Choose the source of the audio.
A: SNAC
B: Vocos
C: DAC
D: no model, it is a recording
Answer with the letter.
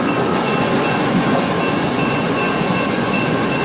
B